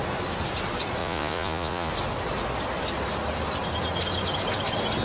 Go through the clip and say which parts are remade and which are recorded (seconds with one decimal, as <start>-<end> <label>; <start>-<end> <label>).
0.0-1.0 recorded; 1.0-1.9 remade; 1.9-5.0 recorded